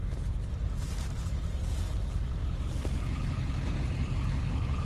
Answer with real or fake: fake